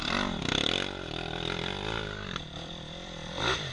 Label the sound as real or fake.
fake